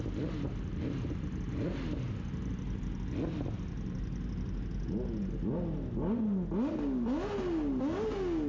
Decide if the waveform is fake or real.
real